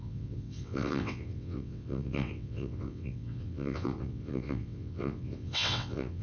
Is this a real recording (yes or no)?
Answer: no